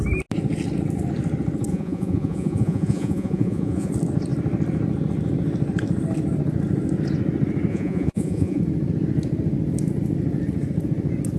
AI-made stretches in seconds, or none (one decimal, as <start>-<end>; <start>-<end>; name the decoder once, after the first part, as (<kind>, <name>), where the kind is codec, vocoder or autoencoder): 1.7-3.9 (vocoder, Vocos); 7.7-8.6